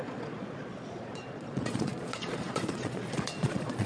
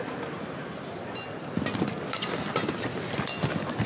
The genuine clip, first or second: second